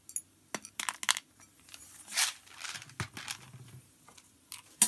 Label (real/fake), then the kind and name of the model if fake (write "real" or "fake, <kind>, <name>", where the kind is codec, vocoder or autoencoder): real